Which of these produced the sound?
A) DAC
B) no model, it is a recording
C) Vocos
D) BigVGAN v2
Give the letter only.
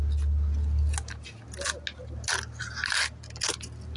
B